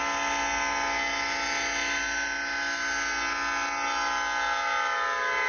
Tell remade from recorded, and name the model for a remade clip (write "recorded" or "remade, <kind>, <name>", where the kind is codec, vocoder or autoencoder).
recorded